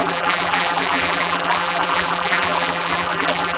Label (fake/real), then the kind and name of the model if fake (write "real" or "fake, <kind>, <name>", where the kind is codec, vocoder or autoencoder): fake, vocoder, BigVGAN v2